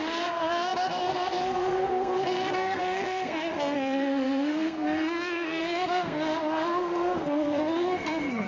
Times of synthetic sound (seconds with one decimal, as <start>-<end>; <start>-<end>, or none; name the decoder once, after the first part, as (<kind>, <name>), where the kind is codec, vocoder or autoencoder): 0.0-8.5 (codec, SNAC)